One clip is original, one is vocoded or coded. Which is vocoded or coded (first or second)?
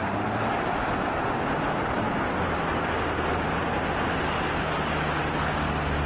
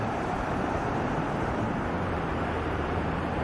second